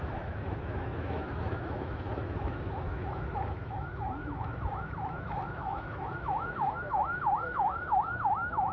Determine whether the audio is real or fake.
fake